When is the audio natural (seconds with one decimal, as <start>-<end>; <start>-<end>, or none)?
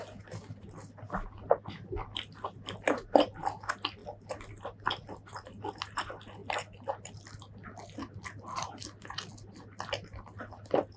0.0-11.0